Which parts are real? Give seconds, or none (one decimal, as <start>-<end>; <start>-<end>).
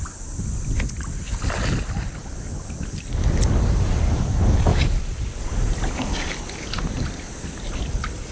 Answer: 0.0-8.3